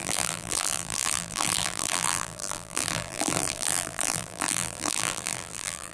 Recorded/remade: remade